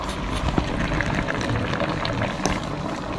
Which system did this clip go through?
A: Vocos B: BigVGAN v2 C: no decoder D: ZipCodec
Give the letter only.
C